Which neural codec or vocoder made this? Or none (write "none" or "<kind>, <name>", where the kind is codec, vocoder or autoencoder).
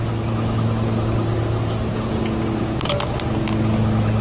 none